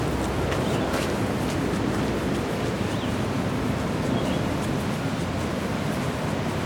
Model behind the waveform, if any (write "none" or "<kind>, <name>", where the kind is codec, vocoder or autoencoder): none